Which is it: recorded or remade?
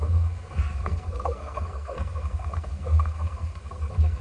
remade